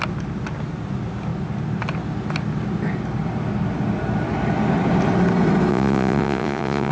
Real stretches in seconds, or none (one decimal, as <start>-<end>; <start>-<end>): 0.0-5.7